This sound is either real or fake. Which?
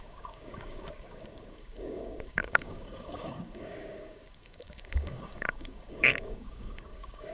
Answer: fake